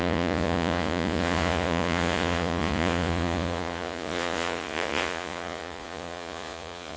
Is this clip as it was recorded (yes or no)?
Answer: no